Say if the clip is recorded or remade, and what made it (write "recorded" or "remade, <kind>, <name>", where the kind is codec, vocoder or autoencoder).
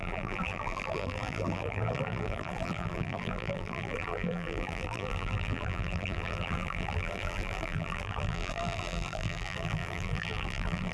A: remade, vocoder, BigVGAN v2